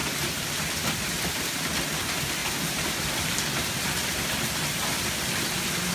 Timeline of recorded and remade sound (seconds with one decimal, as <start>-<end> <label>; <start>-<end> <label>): 0.0-5.9 recorded